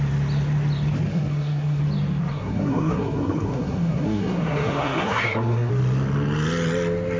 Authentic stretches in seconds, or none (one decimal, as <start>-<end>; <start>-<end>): 0.0-1.1; 1.8-2.3; 5.7-7.2